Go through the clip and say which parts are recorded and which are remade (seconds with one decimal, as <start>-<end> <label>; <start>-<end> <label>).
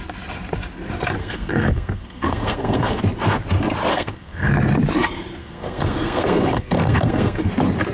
0.0-1.2 recorded; 1.2-3.0 remade; 3.0-3.9 recorded; 3.9-4.5 remade; 4.5-5.4 recorded; 5.4-7.5 remade; 7.5-7.9 recorded